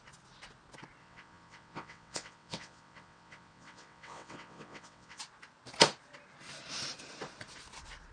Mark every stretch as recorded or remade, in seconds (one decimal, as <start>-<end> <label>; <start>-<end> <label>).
0.0-1.0 recorded; 1.0-5.2 remade; 5.2-8.1 recorded